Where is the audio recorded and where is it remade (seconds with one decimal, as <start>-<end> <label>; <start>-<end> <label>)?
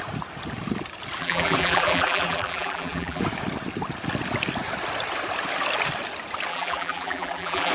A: 0.0-1.2 recorded; 1.2-3.2 remade; 3.2-6.5 recorded; 6.5-7.7 remade